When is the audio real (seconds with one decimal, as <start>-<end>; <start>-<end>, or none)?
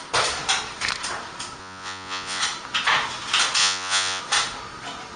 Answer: 0.0-1.6; 2.4-3.6; 4.2-5.2